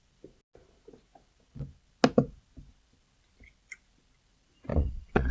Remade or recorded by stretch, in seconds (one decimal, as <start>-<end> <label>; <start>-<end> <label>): 0.0-4.7 recorded; 4.7-5.3 remade